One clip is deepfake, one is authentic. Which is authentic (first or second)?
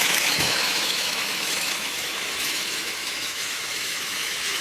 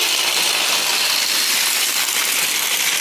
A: second